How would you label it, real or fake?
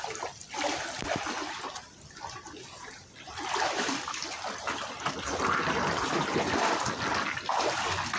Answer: real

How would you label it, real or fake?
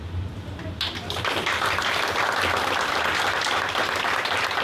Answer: fake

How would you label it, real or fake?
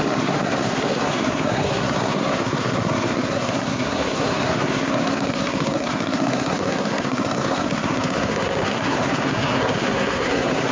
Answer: fake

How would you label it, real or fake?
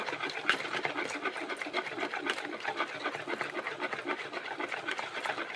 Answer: real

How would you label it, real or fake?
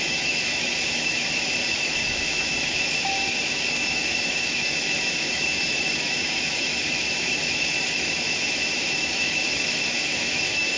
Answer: fake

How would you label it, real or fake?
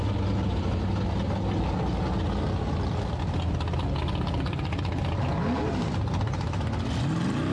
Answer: real